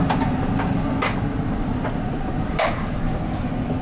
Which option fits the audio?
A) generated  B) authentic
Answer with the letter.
B